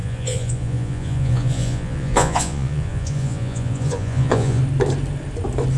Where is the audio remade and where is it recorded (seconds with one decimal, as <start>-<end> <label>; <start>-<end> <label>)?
0.0-4.6 remade; 4.6-5.8 recorded